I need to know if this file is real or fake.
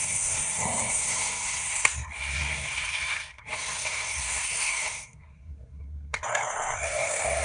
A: fake